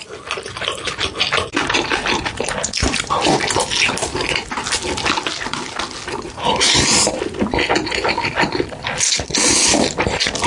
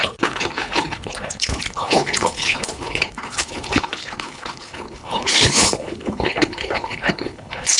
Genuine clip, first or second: first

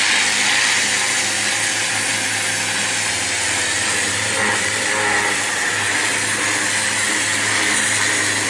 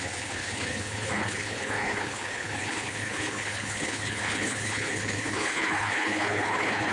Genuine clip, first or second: first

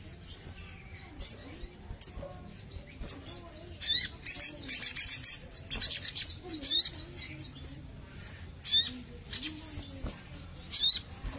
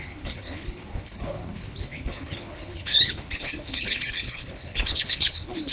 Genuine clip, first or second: first